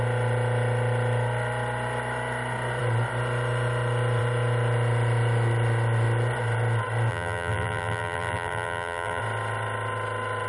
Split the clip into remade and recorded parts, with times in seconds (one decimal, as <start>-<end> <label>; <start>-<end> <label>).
0.0-7.1 recorded; 7.1-9.2 remade; 9.2-10.5 recorded